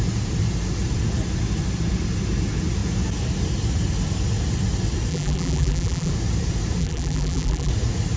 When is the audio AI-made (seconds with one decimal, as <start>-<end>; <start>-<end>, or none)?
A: 5.1-6.1; 6.8-7.7